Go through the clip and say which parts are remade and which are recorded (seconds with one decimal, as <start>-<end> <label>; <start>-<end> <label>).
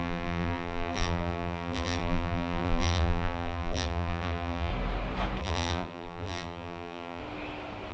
0.0-4.7 remade; 4.7-5.4 recorded; 5.4-7.2 remade; 7.2-7.9 recorded